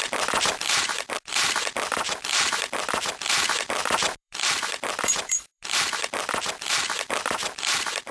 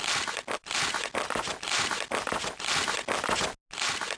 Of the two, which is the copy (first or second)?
first